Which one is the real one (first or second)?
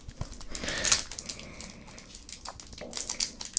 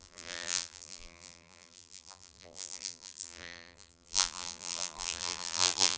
first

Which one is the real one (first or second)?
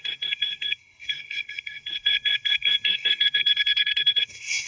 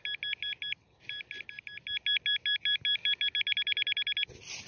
second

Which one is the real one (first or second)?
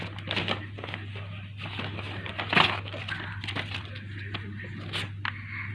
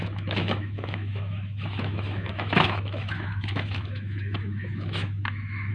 first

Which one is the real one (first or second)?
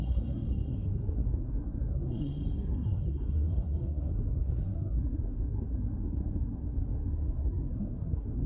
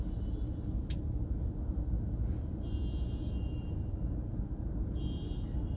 second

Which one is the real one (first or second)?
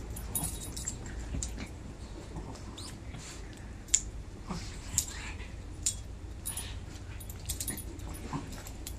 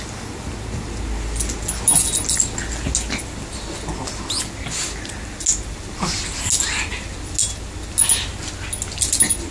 second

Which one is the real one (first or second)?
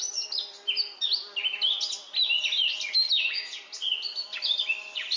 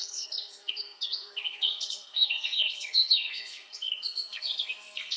first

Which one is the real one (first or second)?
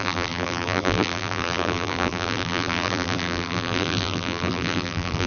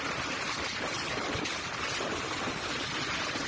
second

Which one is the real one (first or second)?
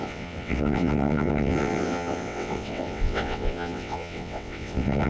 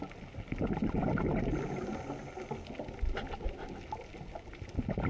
second